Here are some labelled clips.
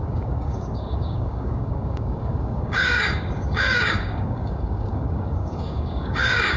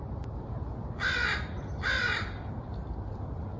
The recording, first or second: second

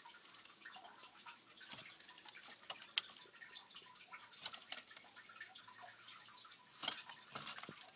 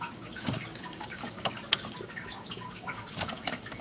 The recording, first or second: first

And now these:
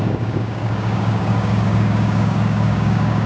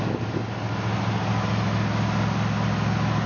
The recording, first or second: second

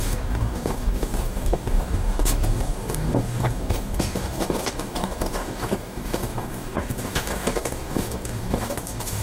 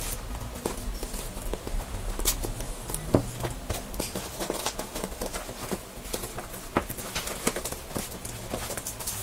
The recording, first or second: second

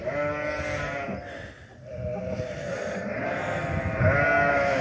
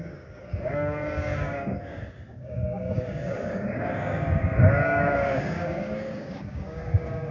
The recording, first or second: first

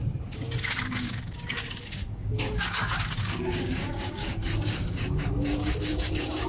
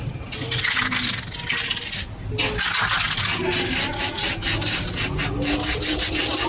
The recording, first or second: second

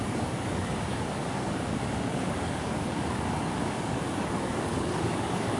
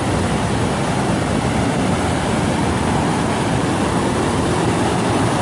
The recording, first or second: second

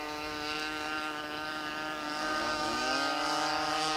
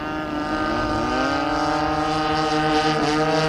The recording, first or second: second